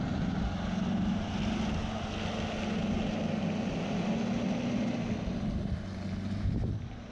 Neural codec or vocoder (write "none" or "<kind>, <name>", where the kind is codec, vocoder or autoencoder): none